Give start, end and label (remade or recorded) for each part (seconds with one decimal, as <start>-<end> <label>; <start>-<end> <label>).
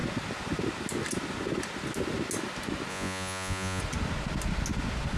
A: 0.0-2.9 recorded; 2.9-3.8 remade; 3.8-5.2 recorded